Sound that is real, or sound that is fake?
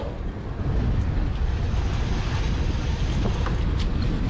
real